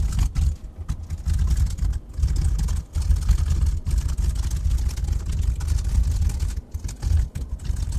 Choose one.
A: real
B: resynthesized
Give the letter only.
A